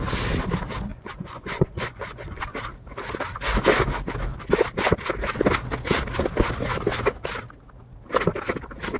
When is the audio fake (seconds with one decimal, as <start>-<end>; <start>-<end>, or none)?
0.9-2.4